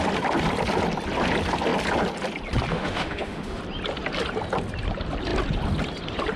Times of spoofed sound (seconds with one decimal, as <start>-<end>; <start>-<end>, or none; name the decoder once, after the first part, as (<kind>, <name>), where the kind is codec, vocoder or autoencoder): 2.7-3.6 (autoencoder, DAC-VAE)